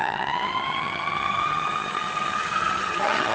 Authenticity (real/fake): fake